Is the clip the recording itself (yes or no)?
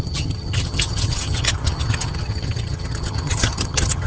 no